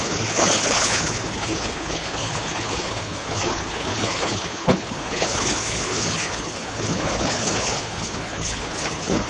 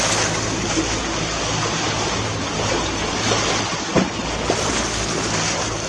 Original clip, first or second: second